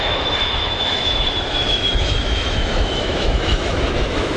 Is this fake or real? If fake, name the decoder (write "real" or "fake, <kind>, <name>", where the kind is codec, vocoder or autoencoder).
fake, autoencoder, DAC-VAE